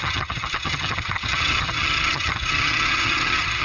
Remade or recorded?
remade